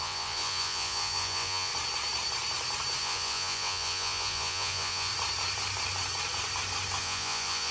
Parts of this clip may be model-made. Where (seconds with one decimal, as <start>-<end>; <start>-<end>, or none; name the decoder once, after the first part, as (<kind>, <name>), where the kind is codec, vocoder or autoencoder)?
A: 0.0-1.7 (vocoder, Vocos); 3.0-5.1; 7.0-7.7